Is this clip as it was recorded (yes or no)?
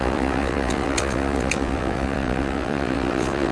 no